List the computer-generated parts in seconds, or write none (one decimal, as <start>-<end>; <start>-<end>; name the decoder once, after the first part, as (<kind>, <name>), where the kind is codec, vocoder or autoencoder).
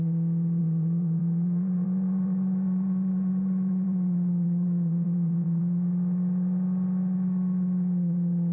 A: 0.6-5.6 (vocoder, Vocos)